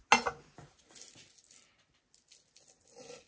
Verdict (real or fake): real